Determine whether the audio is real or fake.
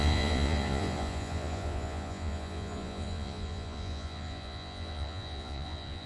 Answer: fake